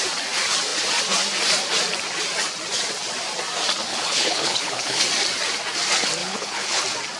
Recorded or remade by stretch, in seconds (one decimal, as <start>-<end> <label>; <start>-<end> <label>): 0.0-3.9 recorded; 3.9-5.0 remade; 5.0-6.2 recorded; 6.2-6.8 remade; 6.8-7.2 recorded

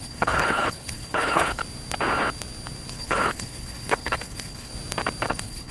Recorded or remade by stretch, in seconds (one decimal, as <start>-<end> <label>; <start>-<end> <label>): 0.0-1.6 remade; 1.6-2.9 recorded; 2.9-4.7 remade; 4.7-5.3 recorded; 5.3-5.7 remade

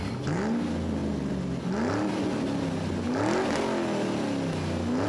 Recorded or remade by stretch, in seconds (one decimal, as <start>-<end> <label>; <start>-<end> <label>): 0.0-5.1 recorded